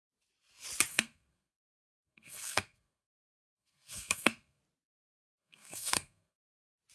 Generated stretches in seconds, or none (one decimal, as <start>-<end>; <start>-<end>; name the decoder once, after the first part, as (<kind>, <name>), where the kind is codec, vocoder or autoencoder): 0.9-4.6 (codec, SNAC); 5.0-6.5